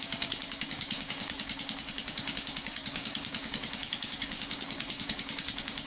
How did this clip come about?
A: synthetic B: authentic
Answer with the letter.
A